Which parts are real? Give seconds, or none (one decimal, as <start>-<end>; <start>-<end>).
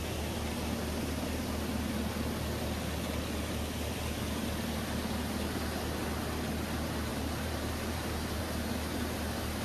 0.0-7.1; 8.4-9.6